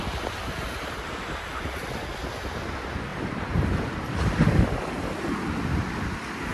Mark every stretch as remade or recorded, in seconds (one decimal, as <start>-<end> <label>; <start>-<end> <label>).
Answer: 0.0-3.1 recorded; 3.1-5.3 remade; 5.3-6.5 recorded

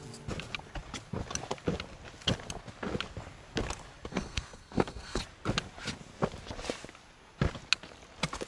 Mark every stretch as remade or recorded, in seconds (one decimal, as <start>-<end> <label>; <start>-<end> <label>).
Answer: 0.0-4.1 recorded; 4.1-5.2 remade; 5.2-8.5 recorded

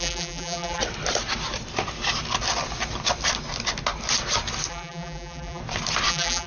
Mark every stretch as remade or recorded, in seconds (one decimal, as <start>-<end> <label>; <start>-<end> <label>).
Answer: 0.0-0.8 remade; 0.8-4.7 recorded; 4.7-5.6 remade; 5.6-6.1 recorded; 6.1-6.5 remade

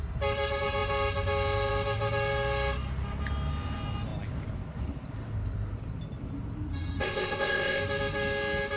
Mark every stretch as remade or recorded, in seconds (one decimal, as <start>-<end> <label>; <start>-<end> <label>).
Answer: 0.0-7.0 recorded; 7.0-7.8 remade; 7.8-8.8 recorded